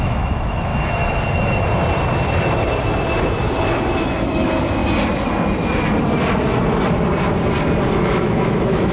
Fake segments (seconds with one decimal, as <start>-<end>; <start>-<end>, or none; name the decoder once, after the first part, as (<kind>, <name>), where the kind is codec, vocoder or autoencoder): 0.0-0.7 (autoencoder, DAC-VAE); 4.0-4.8; 7.9-8.9